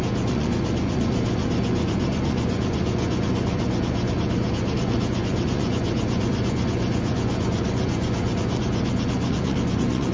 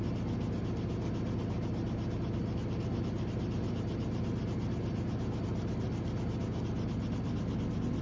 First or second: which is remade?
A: first